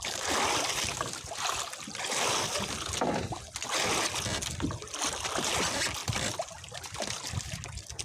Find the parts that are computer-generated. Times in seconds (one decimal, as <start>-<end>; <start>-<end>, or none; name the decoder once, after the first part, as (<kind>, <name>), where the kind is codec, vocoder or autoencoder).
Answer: 6.0-6.8 (vocoder, BigVGAN v2)